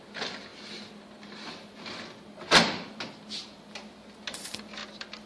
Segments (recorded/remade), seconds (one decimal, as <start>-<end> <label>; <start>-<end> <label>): 0.0-5.3 recorded